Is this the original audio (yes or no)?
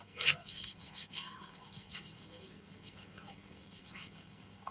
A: no